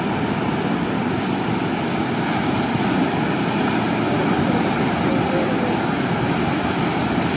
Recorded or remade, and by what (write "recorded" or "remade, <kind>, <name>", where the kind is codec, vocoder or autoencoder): recorded